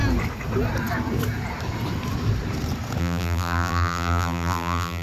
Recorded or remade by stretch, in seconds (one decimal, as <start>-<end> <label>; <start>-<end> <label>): 0.0-3.0 recorded; 3.0-5.0 remade